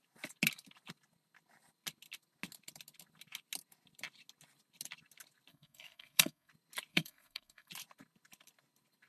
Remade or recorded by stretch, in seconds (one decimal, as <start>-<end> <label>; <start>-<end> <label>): 0.0-5.5 recorded; 5.5-6.5 remade; 6.5-6.9 recorded; 6.9-7.7 remade; 7.7-9.1 recorded